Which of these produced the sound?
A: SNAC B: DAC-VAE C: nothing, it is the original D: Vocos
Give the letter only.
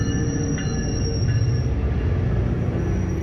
C